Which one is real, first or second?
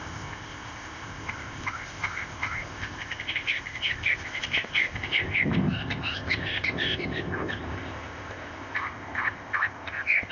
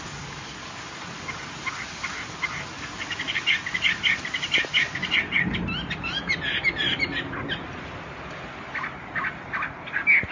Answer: second